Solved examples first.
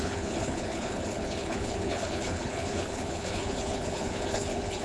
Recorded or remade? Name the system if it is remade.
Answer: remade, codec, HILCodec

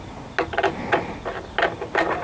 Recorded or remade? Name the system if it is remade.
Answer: recorded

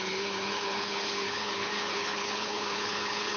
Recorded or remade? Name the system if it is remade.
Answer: remade, codec, HILCodec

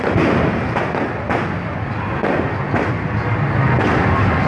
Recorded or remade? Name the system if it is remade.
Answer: recorded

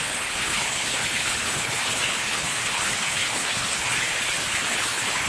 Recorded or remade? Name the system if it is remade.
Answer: remade, codec, HILCodec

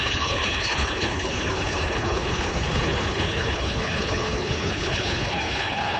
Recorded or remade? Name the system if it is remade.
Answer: remade, codec, HILCodec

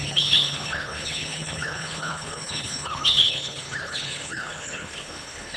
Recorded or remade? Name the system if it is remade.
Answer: remade, codec, HILCodec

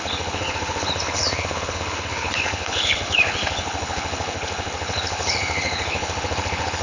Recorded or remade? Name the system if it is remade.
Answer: remade, codec, HILCodec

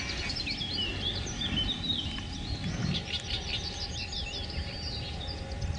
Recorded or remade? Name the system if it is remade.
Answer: recorded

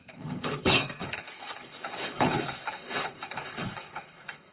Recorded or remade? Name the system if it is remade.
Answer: remade, codec, HILCodec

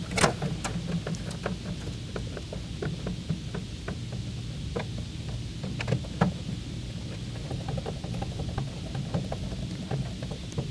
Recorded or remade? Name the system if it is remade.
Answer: recorded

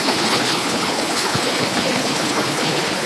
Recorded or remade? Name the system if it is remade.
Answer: remade, codec, HILCodec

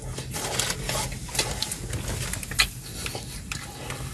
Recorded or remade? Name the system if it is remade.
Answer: recorded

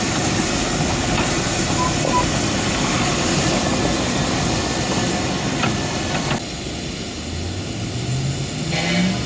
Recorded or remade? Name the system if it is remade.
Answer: recorded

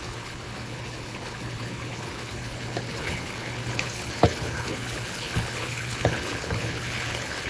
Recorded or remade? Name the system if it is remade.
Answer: remade, codec, HILCodec